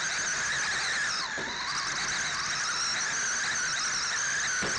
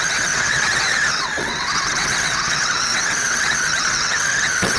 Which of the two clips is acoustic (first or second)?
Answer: first